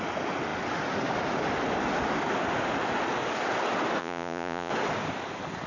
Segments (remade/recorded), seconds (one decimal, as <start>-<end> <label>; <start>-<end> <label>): 0.0-4.0 recorded; 4.0-4.7 remade; 4.7-5.7 recorded